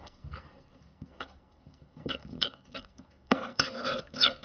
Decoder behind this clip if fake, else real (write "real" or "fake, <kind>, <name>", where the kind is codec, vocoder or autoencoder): fake, codec, SNAC